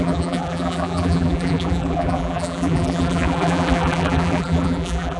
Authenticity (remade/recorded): remade